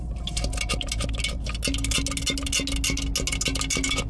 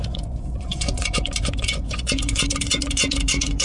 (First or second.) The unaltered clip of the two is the first